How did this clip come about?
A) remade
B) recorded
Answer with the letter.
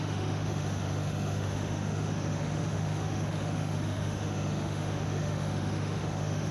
A